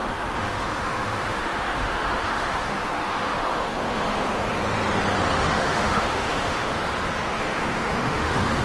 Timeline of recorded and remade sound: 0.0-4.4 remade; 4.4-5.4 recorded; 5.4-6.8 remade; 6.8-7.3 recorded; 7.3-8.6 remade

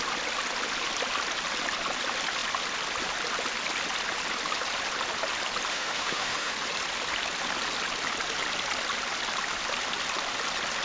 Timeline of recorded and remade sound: 0.0-5.7 recorded; 5.7-6.5 remade; 6.5-10.8 recorded

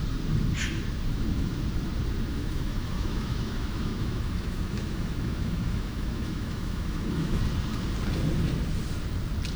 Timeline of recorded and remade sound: 0.0-1.1 recorded; 1.1-1.6 remade; 1.6-2.3 recorded; 2.3-7.4 remade; 7.4-9.6 recorded

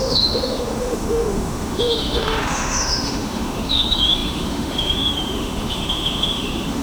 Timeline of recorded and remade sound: 0.0-6.8 remade

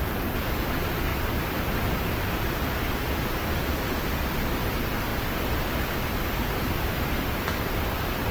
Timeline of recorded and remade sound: 0.0-8.3 recorded

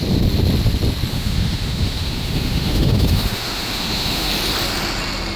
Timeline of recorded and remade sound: 0.0-1.1 recorded; 1.1-4.3 remade; 4.3-5.4 recorded

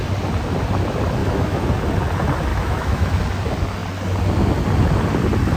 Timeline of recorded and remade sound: 0.0-1.2 recorded; 1.2-1.7 remade; 1.7-2.5 recorded; 2.5-3.2 remade; 3.2-5.6 recorded